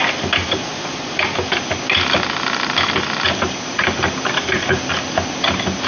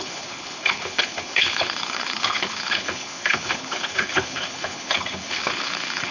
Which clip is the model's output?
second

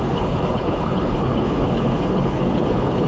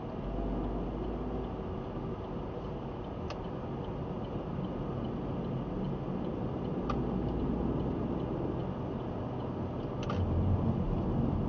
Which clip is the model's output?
first